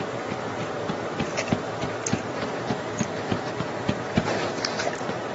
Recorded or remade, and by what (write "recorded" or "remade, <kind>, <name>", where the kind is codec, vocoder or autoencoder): remade, vocoder, BigVGAN v2